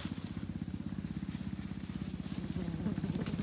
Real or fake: real